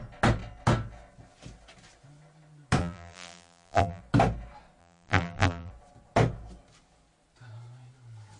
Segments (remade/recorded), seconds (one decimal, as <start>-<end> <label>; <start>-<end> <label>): 0.0-2.8 recorded; 2.8-4.0 remade; 4.0-4.8 recorded; 4.8-5.7 remade; 5.7-8.4 recorded